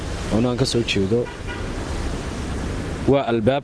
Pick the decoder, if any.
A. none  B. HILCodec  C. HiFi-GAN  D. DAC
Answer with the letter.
A